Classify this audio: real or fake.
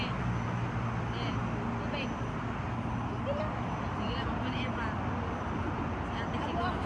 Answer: real